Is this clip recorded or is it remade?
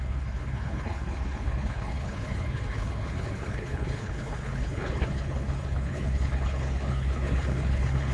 remade